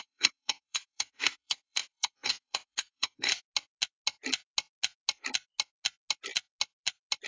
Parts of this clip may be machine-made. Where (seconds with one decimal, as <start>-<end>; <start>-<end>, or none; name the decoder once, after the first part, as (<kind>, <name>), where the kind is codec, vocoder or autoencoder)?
0.0-3.3 (codec, SNAC)